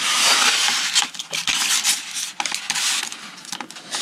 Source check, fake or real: real